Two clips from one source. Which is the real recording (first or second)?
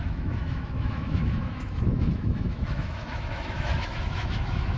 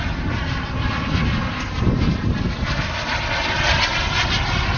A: second